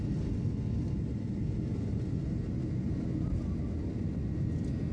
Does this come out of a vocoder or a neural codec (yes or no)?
no